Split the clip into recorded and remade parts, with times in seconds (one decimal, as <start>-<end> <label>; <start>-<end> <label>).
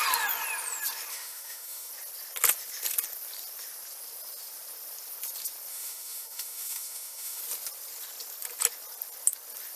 0.0-1.1 recorded; 1.1-1.9 remade; 1.9-5.7 recorded; 5.7-7.4 remade; 7.4-9.8 recorded